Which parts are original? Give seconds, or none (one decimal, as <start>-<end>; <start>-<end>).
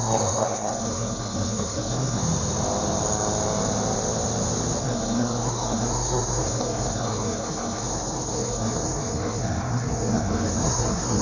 2.2-4.8